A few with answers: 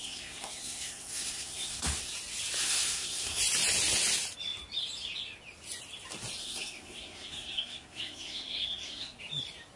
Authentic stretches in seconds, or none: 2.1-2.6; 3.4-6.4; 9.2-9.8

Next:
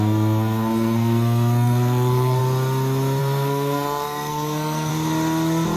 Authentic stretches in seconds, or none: 2.4-3.2; 4.9-5.8

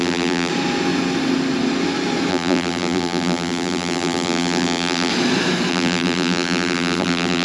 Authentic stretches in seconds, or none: 0.5-2.3; 5.1-5.7

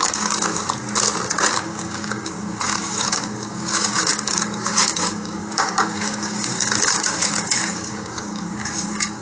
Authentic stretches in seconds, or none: 0.6-1.5

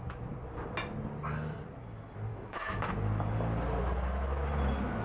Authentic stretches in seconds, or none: 0.0-2.3; 2.9-5.0

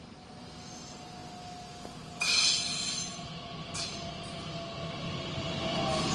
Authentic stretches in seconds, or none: 0.0-6.1

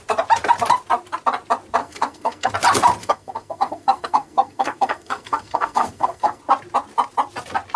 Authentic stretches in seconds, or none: 0.0-1.8; 2.5-3.0; 6.4-7.8